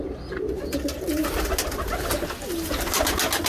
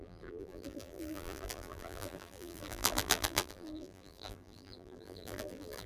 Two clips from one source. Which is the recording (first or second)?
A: first